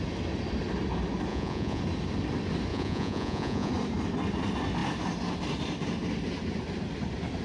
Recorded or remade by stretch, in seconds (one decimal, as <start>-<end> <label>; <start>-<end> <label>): 0.0-1.3 recorded; 1.3-1.8 remade; 1.8-2.7 recorded; 2.7-3.7 remade; 3.7-7.4 recorded